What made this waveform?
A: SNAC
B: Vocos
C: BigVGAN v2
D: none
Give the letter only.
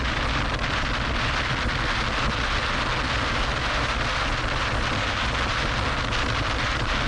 D